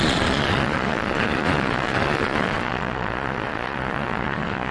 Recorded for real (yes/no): no